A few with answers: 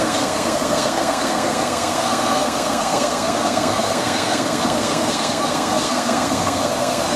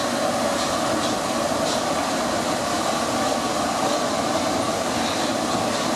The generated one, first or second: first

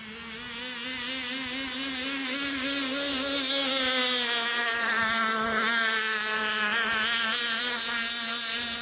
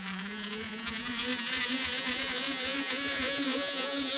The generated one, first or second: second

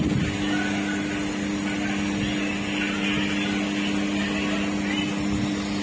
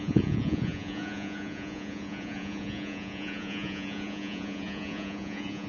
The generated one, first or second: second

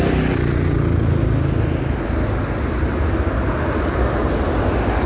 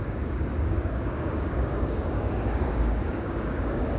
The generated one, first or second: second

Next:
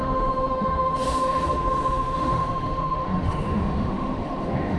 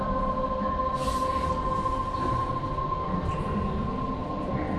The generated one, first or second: first